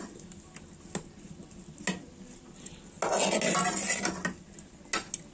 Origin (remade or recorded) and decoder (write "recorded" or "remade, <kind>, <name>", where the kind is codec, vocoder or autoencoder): recorded